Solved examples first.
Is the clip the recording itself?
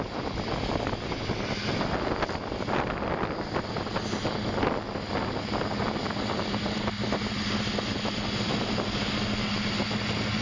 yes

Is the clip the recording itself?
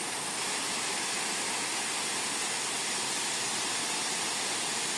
yes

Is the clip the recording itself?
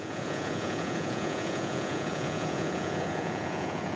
no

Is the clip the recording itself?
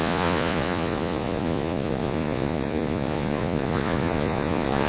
no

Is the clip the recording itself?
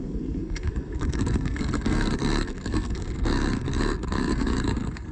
no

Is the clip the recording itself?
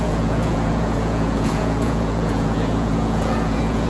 no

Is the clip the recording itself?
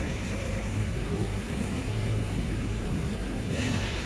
no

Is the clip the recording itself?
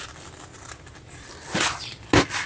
yes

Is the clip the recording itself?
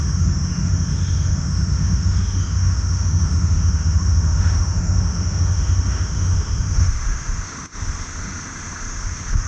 no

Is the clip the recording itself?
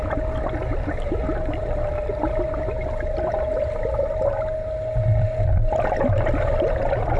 yes